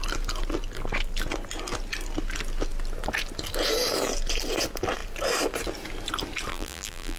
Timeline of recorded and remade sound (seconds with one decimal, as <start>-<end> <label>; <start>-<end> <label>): 0.0-6.5 recorded; 6.5-7.2 remade